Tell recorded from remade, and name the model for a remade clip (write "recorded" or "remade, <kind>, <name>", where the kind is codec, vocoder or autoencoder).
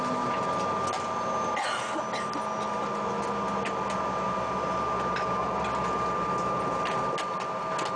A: recorded